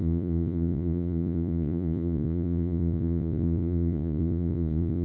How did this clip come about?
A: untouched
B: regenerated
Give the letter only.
B